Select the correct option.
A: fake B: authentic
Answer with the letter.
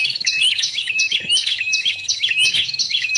A